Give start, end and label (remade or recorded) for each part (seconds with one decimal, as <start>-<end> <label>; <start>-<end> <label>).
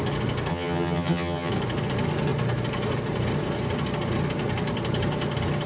0.0-0.5 recorded; 0.5-1.5 remade; 1.5-5.7 recorded